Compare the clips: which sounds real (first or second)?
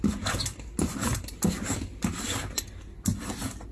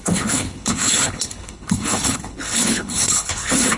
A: first